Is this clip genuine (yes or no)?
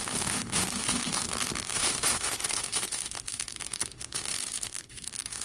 no